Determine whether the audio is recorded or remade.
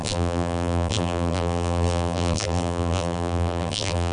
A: remade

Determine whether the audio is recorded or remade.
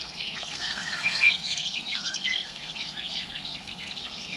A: remade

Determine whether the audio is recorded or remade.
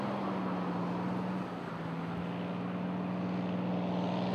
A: recorded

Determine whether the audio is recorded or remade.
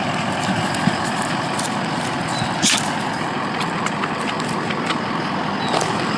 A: recorded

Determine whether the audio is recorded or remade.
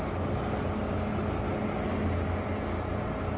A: recorded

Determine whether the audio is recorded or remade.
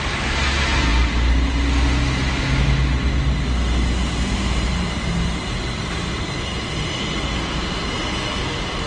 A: recorded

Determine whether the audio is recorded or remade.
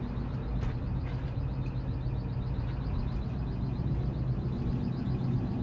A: recorded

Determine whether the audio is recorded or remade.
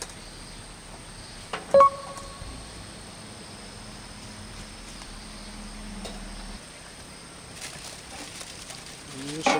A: recorded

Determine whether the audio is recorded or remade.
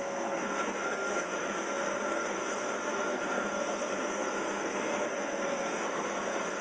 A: remade